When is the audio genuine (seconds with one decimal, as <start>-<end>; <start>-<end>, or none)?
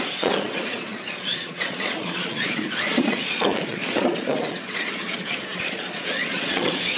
none